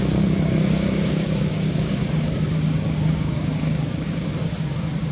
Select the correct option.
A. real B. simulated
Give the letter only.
B